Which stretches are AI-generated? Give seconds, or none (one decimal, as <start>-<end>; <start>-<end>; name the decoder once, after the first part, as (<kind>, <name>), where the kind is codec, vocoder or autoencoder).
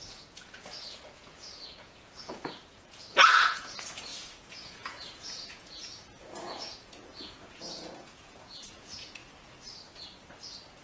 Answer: 0.0-9.2 (vocoder, Vocos)